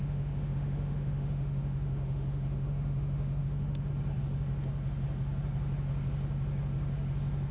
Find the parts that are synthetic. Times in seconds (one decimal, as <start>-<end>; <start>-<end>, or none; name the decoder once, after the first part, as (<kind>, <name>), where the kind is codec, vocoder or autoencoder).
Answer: 0.0-3.9 (autoencoder, DAC-VAE)